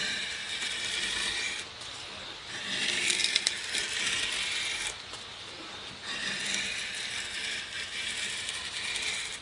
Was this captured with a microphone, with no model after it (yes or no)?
yes